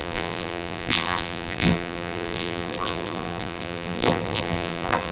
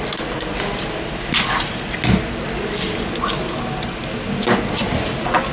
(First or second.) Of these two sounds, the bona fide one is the second